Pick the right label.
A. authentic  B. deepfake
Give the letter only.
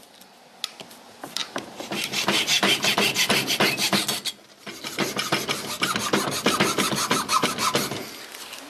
A